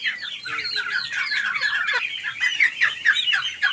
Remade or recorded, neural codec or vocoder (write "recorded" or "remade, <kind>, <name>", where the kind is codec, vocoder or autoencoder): remade, vocoder, BigVGAN v2